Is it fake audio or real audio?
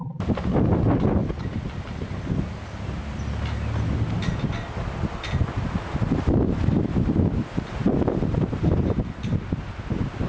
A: real